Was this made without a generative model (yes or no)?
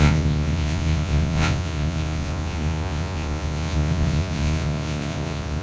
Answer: no